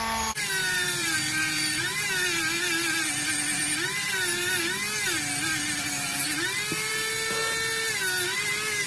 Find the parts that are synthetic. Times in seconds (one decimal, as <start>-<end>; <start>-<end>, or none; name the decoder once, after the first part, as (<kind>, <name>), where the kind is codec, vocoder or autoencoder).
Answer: 0.6-2.1 (vocoder, BigVGAN v2)